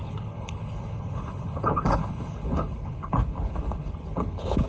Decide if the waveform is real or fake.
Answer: fake